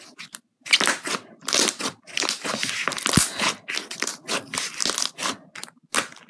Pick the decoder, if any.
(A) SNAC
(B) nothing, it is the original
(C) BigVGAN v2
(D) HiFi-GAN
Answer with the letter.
B